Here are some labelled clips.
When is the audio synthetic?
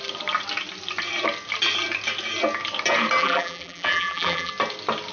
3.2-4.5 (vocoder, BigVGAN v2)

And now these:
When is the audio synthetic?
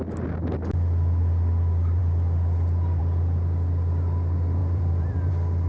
4.6-5.3 (vocoder, BigVGAN v2)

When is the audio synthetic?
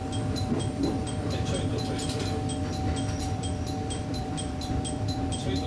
0.0-1.7 (vocoder, BigVGAN v2); 3.2-5.7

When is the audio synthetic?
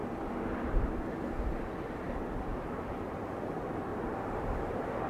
2.5-3.4 (vocoder, BigVGAN v2); 3.9-5.1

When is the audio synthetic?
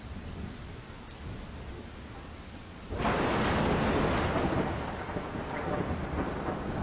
1.8-2.3 (vocoder, BigVGAN v2)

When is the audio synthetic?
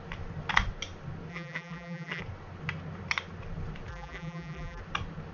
1.3-2.2 (vocoder, BigVGAN v2); 3.9-4.8